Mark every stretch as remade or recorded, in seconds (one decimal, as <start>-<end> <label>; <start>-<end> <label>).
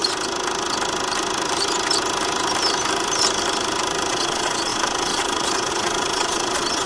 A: 0.0-4.1 recorded; 4.1-6.9 remade